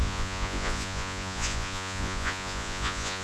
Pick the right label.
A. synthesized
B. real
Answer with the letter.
A